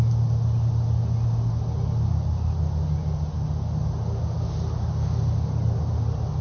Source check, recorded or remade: recorded